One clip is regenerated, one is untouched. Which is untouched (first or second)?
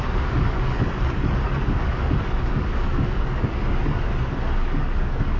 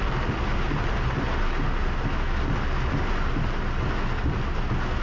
second